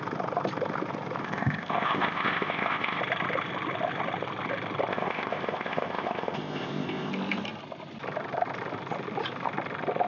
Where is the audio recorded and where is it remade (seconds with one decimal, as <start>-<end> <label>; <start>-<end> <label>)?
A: 0.0-1.2 recorded; 1.2-3.0 remade; 3.0-4.9 recorded; 4.9-7.1 remade; 7.1-10.1 recorded